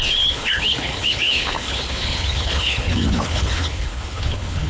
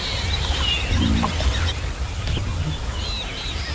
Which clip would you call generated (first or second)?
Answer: first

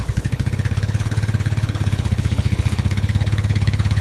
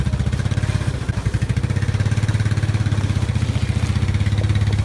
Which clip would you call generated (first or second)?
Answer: first